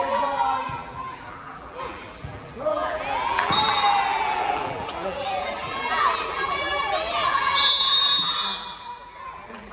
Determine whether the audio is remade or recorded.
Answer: remade